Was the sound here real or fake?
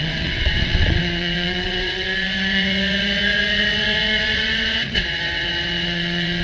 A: fake